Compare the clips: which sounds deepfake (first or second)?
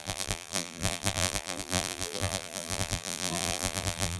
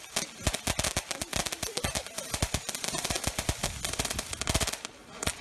first